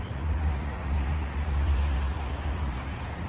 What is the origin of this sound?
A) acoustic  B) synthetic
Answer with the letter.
B